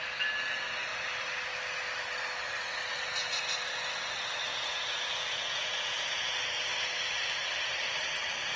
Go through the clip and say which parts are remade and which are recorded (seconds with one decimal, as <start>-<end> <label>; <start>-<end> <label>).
0.0-4.5 recorded; 4.5-6.4 remade; 6.4-8.6 recorded